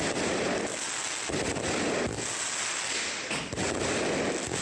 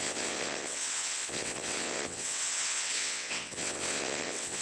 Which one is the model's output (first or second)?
second